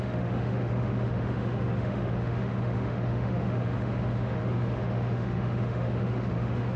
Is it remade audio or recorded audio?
remade